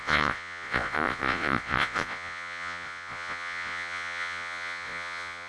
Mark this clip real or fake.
fake